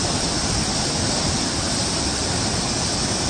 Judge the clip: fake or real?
real